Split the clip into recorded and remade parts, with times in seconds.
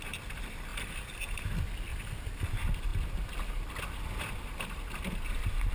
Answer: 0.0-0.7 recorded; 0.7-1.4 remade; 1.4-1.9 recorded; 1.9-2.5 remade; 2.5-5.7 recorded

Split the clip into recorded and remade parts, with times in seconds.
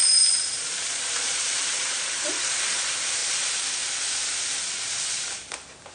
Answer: 0.0-3.2 remade; 3.2-5.9 recorded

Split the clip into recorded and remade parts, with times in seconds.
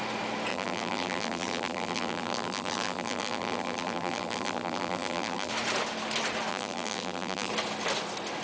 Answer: 0.0-0.5 recorded; 0.5-5.5 remade; 5.5-6.5 recorded; 6.5-7.5 remade; 7.5-8.4 recorded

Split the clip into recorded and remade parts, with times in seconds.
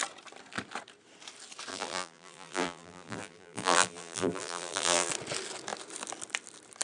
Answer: 0.0-1.7 recorded; 1.7-5.1 remade; 5.1-6.8 recorded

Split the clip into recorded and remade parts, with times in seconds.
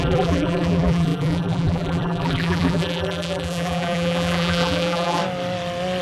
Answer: 0.0-5.2 remade; 5.2-6.0 recorded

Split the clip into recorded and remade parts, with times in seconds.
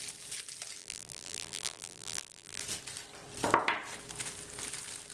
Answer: 0.0-0.8 recorded; 0.8-2.6 remade; 2.6-5.1 recorded